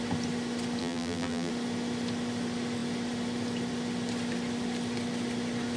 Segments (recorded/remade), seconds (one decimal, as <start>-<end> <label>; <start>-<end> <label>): 0.0-0.8 recorded; 0.8-1.5 remade; 1.5-5.8 recorded